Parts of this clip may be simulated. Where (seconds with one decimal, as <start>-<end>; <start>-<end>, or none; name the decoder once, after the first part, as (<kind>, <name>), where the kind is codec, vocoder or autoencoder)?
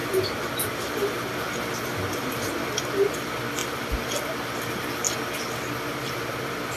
none